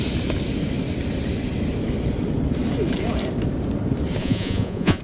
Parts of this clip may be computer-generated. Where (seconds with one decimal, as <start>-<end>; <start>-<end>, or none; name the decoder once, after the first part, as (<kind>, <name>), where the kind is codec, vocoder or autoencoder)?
4.2-5.0 (vocoder, Vocos)